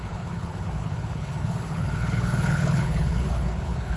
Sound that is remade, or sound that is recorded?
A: remade